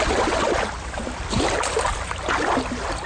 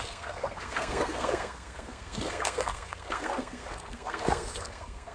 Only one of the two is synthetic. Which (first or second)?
second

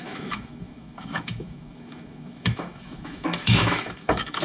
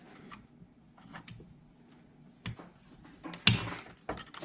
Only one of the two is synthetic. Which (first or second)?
first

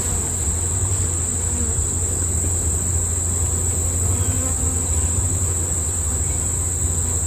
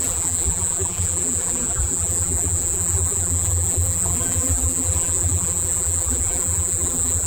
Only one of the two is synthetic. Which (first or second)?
second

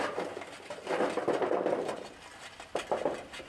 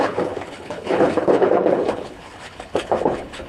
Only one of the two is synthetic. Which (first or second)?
second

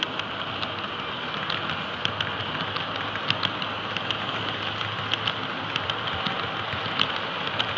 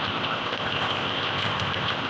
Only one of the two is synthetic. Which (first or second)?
second